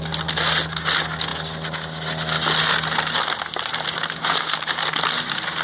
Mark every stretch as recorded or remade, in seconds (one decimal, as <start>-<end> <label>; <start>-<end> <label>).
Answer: 0.0-5.6 recorded